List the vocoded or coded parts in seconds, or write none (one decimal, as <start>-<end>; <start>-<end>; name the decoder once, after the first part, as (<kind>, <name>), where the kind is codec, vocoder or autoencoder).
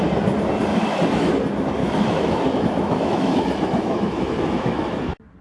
0.7-1.3 (autoencoder, DAC-VAE); 1.8-5.0